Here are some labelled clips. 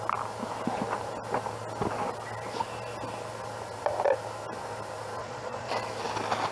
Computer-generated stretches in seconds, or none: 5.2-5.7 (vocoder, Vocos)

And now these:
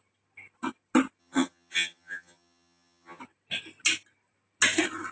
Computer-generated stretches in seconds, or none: 1.2-3.2 (vocoder, HiFi-GAN)

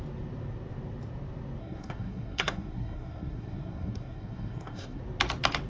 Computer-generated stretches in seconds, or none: 1.6-5.0 (codec, SNAC)